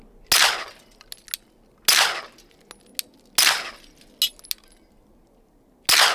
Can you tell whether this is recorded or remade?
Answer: recorded